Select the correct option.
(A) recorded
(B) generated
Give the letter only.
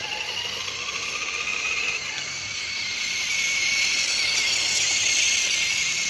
A